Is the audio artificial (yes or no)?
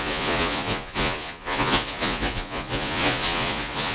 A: yes